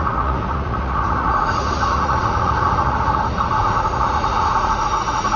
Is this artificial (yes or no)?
yes